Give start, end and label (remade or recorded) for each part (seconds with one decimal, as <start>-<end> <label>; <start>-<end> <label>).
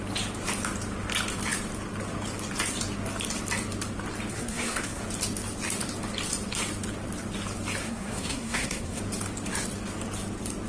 0.0-4.3 recorded; 4.3-5.0 remade; 5.0-7.8 recorded; 7.8-9.0 remade; 9.0-10.7 recorded